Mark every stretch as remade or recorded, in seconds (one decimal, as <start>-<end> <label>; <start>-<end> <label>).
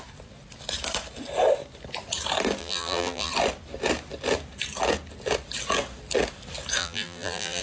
0.0-2.6 recorded; 2.6-3.3 remade; 3.3-6.8 recorded; 6.8-7.6 remade